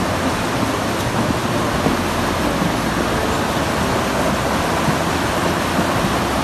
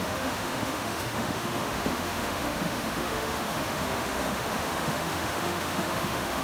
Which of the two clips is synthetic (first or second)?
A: second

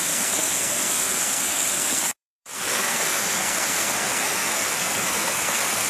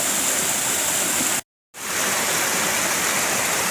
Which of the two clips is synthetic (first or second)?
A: first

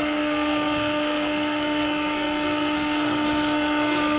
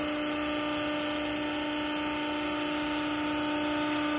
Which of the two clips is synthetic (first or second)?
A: first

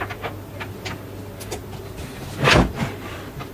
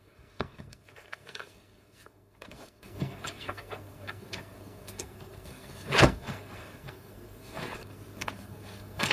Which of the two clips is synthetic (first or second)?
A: second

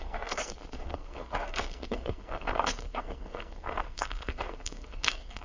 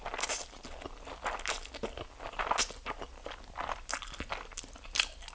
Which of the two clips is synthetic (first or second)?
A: first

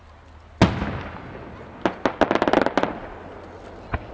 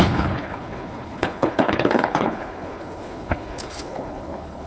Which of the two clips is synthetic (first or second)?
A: second